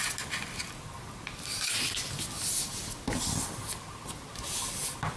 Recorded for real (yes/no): yes